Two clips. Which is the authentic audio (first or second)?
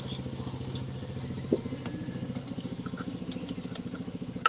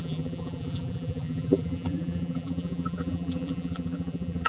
first